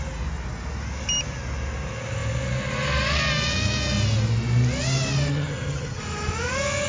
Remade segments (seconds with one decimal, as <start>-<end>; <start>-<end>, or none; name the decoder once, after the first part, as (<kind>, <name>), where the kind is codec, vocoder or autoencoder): 5.3-6.0 (vocoder, HiFi-GAN)